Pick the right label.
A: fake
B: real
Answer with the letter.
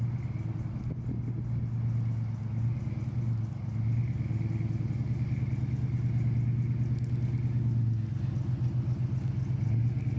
B